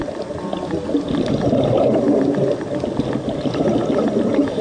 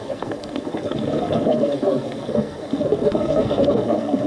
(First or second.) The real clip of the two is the first